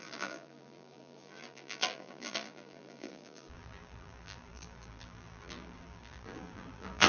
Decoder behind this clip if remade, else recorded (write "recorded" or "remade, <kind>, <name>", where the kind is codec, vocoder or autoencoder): remade, vocoder, BigVGAN v2